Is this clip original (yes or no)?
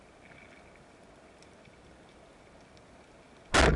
yes